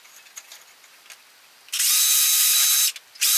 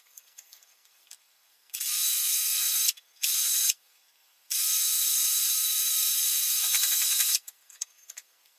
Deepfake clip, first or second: second